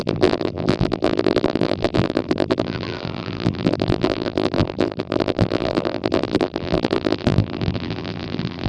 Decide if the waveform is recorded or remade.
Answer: remade